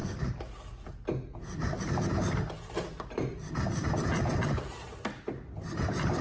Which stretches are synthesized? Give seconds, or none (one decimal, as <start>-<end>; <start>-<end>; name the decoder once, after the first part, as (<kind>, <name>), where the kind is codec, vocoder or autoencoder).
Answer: none